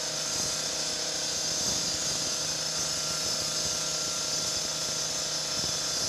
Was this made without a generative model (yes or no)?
yes